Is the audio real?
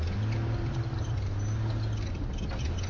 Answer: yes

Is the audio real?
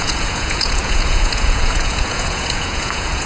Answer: no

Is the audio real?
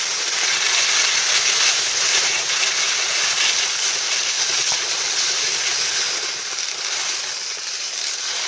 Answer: yes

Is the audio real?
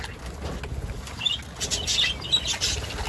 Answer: yes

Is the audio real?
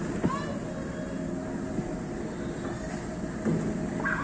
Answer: yes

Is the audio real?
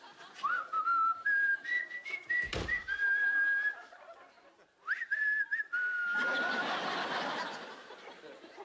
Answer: yes